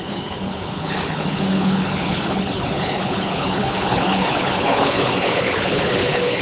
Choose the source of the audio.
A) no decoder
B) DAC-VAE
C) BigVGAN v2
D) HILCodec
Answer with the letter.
D